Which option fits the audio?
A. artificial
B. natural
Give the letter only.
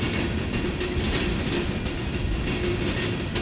B